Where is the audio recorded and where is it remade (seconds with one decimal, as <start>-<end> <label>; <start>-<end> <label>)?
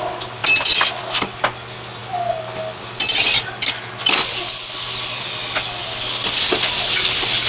0.0-0.4 recorded; 0.4-1.0 remade; 1.0-7.5 recorded